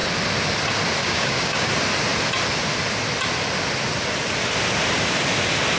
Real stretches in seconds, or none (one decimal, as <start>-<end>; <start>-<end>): 0.0-1.0; 1.7-5.8